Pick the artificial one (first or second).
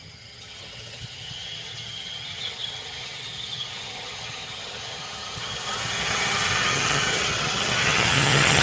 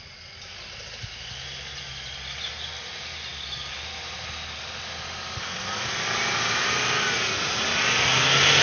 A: first